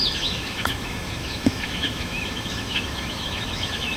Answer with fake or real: fake